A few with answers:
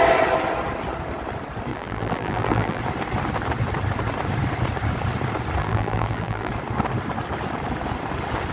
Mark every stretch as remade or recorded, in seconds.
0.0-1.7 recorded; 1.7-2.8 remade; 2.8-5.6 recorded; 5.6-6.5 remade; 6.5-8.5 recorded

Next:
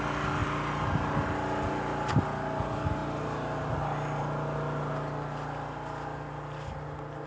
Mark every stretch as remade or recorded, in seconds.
0.0-7.3 recorded

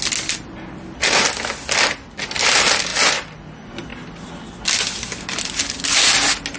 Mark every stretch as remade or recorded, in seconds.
0.0-2.9 recorded; 2.9-3.4 remade; 3.4-3.9 recorded; 3.9-5.4 remade; 5.4-6.6 recorded

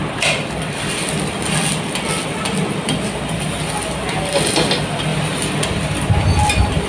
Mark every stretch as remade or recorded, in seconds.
0.0-6.9 recorded

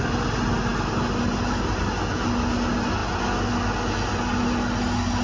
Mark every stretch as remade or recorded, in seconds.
0.0-5.2 recorded